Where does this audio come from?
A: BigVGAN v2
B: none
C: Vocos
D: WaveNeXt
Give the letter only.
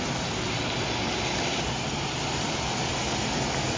B